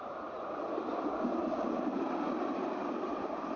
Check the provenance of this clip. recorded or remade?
recorded